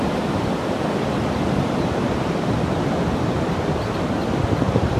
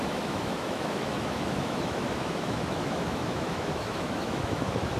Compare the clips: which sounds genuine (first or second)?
first